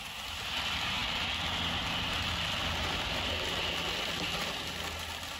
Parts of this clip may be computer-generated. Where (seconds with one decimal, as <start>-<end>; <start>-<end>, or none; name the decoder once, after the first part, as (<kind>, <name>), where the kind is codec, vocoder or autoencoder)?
none